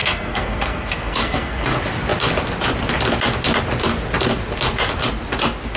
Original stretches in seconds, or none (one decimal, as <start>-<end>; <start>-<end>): 1.7-5.8